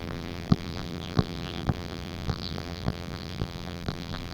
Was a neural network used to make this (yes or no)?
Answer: yes